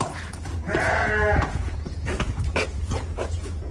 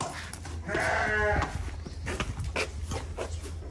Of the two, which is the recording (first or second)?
second